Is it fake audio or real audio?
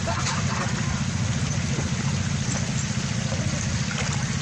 real